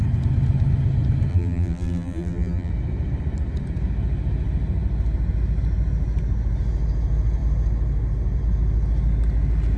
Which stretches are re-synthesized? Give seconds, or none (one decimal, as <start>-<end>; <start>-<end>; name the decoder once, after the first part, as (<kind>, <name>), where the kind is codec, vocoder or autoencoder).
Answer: 1.3-2.7 (vocoder, BigVGAN v2)